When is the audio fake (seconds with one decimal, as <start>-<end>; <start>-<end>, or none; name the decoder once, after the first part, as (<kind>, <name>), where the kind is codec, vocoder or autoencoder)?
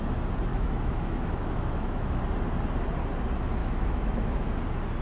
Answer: 0.5-2.2 (autoencoder, DAC-VAE); 3.6-4.5